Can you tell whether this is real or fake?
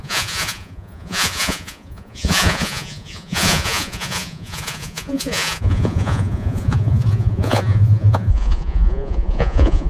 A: fake